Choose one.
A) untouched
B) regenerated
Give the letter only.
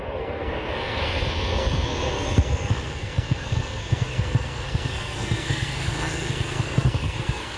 B